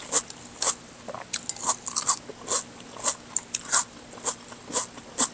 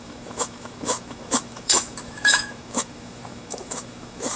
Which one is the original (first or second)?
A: first